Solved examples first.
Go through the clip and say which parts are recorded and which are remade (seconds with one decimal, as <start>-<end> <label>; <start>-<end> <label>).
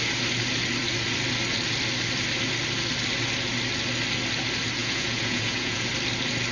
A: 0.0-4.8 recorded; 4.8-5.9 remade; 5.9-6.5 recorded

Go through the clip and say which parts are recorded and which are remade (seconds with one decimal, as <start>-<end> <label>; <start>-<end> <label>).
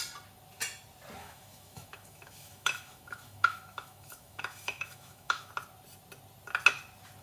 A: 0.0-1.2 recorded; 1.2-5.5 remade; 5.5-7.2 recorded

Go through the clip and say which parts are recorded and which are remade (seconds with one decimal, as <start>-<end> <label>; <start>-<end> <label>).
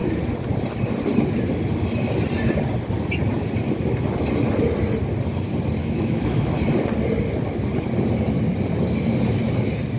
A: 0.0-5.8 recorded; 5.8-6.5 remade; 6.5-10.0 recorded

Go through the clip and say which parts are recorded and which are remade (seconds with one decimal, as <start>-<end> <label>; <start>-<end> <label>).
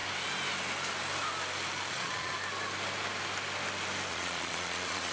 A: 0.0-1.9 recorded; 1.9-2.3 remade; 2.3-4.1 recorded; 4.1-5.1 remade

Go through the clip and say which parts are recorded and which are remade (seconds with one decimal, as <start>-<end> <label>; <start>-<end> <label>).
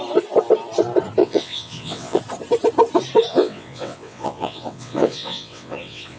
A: 0.0-1.2 recorded; 1.2-2.2 remade; 2.2-3.3 recorded; 3.3-6.2 remade